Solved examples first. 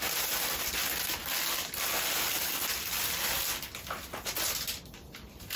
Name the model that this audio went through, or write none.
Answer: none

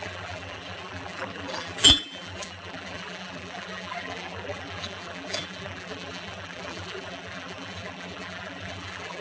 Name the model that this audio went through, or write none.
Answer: vocoder, BigVGAN v2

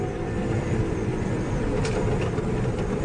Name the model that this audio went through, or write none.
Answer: none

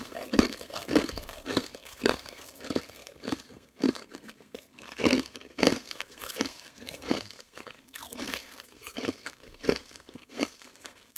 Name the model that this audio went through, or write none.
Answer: codec, SNAC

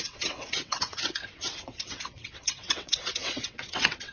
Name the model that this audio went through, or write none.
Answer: vocoder, WaveNeXt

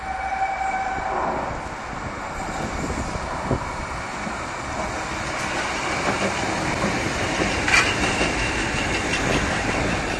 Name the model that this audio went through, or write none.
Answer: none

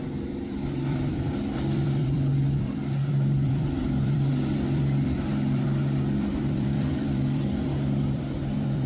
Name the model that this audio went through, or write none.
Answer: vocoder, BigVGAN v2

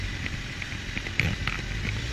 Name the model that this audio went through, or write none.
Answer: none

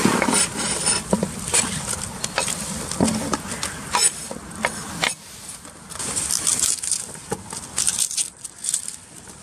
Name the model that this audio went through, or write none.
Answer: none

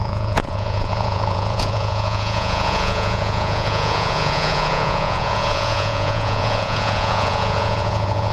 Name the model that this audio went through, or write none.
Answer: vocoder, Vocos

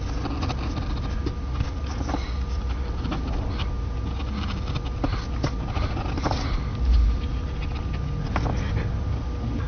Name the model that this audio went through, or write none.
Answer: none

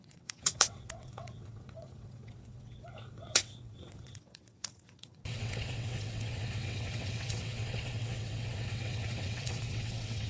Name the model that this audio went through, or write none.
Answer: vocoder, WaveNeXt